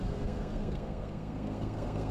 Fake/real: fake